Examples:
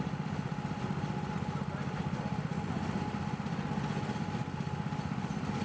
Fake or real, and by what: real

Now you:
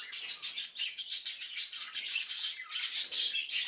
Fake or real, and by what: real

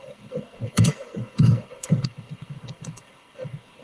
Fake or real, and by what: fake, codec, SNAC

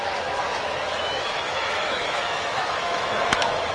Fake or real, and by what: fake, autoencoder, DAC-VAE